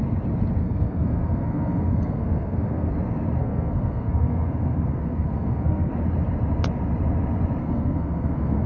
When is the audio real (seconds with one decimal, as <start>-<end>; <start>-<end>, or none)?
0.0-0.6; 2.9-3.4; 5.9-7.6